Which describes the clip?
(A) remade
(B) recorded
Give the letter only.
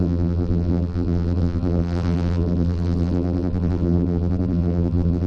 A